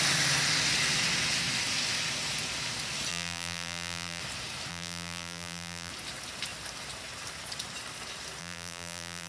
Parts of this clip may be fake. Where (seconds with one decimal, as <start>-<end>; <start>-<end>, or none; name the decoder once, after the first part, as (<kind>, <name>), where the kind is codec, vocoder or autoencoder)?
3.1-4.2 (vocoder, BigVGAN v2); 4.7-5.9; 8.4-9.3